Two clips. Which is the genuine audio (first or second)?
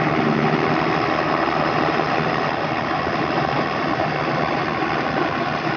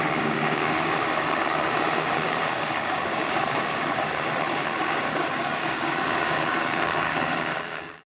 first